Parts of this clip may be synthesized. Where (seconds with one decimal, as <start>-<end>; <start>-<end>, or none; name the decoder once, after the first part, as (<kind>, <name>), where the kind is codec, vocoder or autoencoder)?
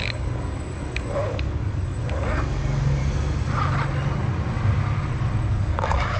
0.0-3.0 (codec, DAC); 5.5-6.2